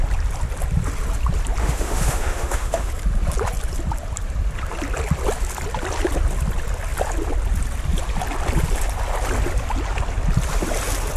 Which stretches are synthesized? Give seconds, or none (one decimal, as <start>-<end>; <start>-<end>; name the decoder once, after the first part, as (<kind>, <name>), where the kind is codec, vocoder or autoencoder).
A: 1.6-2.9 (autoencoder, DAC-VAE)